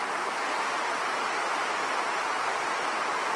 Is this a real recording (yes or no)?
yes